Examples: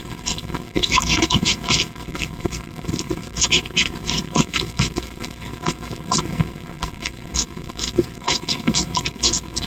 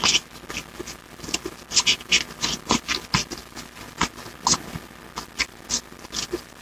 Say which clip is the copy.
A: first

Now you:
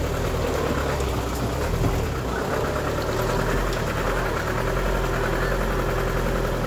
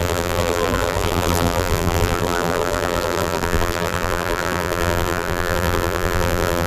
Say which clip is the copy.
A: second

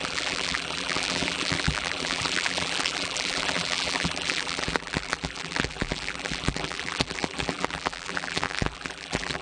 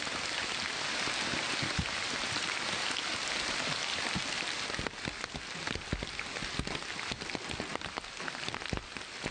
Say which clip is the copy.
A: first